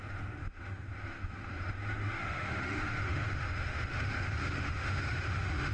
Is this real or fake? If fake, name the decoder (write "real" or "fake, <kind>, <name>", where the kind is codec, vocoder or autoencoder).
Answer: fake, autoencoder, DAC-VAE